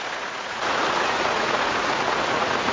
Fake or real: fake